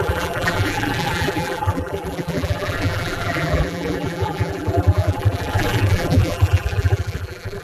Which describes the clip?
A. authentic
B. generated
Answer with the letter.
B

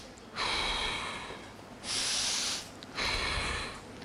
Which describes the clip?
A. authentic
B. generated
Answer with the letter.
A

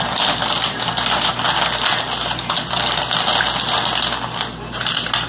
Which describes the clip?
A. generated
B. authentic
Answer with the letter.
B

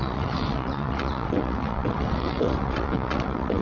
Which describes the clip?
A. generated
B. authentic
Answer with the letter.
A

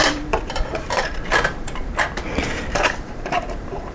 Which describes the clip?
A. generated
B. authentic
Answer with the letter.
A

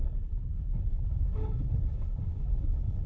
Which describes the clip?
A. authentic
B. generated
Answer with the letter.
B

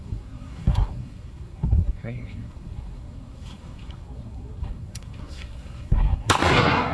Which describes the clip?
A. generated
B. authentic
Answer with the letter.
A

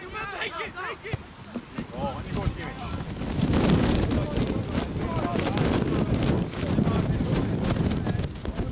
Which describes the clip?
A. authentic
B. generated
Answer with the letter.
A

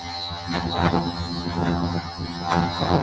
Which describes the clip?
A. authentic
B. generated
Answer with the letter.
B